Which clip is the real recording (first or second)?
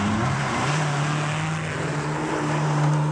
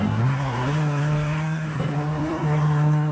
first